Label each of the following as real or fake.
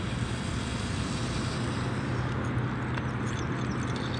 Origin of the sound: real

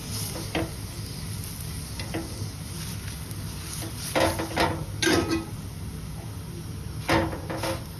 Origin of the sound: real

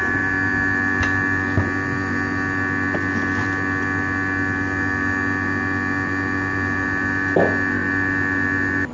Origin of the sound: real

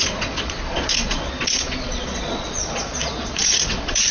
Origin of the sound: fake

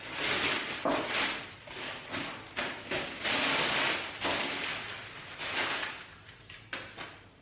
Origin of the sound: real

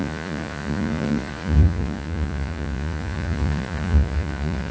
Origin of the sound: fake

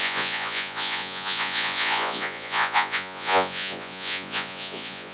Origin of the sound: fake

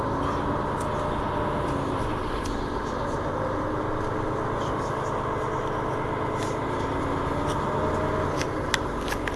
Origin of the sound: real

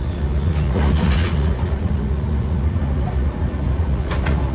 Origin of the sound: fake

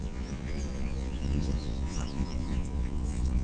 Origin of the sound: fake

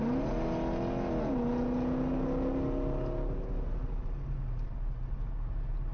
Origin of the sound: real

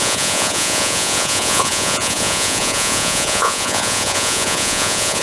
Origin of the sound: fake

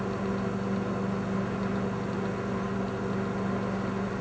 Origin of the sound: real